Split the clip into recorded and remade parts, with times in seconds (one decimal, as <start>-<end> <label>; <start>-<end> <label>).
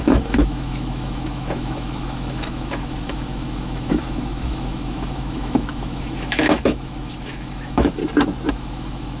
0.0-8.0 remade; 8.0-8.5 recorded; 8.5-9.2 remade